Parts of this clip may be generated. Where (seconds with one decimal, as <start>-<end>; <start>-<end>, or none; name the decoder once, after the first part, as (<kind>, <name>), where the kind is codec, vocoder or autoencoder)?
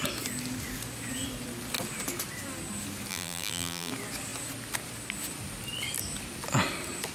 3.1-3.9 (vocoder, BigVGAN v2)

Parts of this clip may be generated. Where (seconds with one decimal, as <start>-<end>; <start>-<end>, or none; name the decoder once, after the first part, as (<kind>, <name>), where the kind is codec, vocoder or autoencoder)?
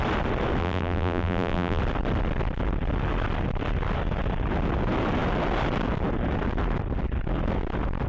0.6-1.8 (vocoder, BigVGAN v2)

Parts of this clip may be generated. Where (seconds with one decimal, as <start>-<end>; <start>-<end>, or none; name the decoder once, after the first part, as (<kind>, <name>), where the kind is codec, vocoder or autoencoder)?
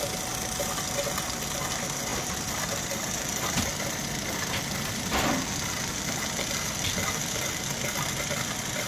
2.1-3.6 (vocoder, BigVGAN v2)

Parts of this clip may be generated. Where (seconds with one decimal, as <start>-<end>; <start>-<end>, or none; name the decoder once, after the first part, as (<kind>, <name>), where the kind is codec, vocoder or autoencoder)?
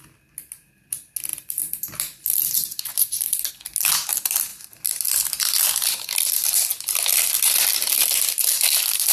1.3-3.5 (vocoder, BigVGAN v2)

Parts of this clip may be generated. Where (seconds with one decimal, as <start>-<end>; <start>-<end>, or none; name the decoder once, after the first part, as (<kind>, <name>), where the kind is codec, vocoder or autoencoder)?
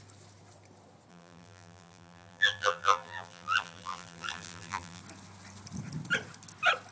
1.1-5.0 (vocoder, BigVGAN v2)